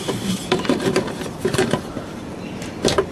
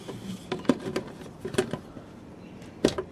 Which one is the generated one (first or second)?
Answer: first